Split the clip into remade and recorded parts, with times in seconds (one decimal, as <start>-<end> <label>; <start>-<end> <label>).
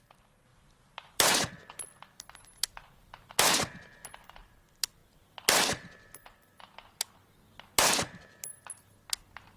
0.0-0.5 recorded; 0.5-1.5 remade; 1.5-9.6 recorded